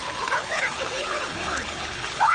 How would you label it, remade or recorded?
remade